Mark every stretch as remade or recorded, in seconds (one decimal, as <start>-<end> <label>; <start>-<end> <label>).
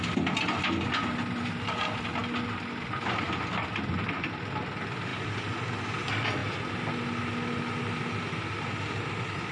0.0-9.5 recorded